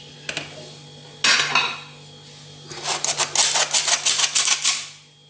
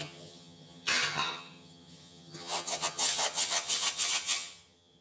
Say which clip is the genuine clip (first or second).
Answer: first